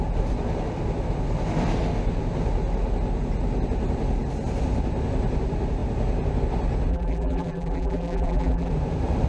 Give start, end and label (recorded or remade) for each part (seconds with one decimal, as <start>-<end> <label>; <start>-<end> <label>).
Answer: 0.0-6.9 recorded; 6.9-8.7 remade; 8.7-9.3 recorded